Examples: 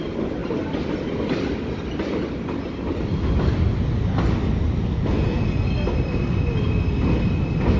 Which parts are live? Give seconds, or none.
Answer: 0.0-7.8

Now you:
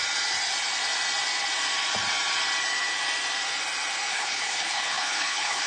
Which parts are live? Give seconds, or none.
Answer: 0.0-4.1

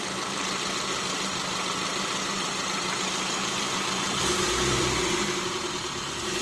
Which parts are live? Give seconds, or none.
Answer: 1.4-1.9

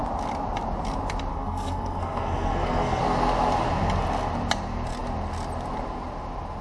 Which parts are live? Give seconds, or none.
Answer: 0.0-1.3; 3.0-6.6

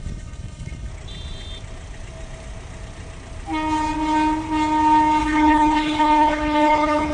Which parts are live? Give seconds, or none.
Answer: 0.9-5.2

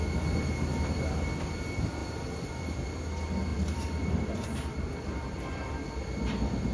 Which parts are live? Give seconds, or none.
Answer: 0.0-2.0; 2.6-3.5; 5.7-6.7

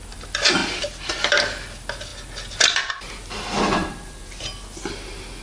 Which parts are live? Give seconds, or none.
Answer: 0.0-3.8; 4.4-5.4

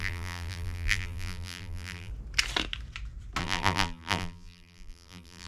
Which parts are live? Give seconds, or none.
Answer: 2.1-3.4